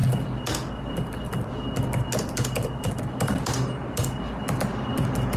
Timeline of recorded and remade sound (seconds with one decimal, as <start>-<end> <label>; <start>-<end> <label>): 0.0-5.4 recorded